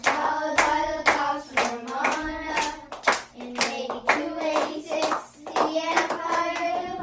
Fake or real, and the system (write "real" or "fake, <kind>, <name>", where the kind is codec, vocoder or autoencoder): real